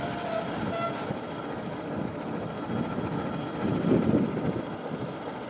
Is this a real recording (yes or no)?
yes